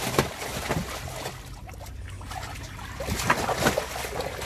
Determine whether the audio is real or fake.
real